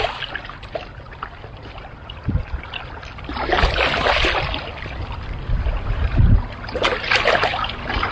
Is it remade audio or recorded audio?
recorded